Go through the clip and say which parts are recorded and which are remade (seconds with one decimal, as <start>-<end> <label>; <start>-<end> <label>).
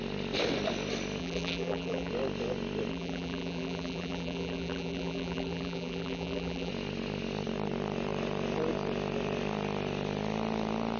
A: 0.0-1.2 recorded; 1.2-2.1 remade; 2.1-2.9 recorded; 2.9-6.7 remade; 6.7-11.0 recorded